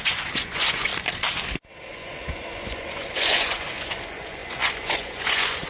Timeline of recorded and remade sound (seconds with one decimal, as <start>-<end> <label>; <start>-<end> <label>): 0.0-0.9 remade; 0.9-1.9 recorded; 1.9-5.7 remade